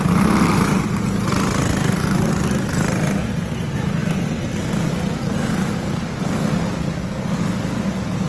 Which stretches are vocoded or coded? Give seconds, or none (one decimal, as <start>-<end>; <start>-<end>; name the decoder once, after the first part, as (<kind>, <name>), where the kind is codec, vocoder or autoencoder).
none